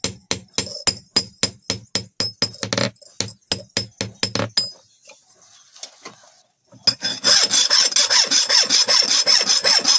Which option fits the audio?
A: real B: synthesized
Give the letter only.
A